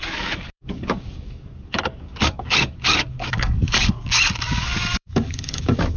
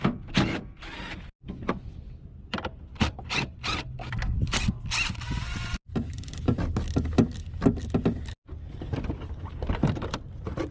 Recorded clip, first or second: second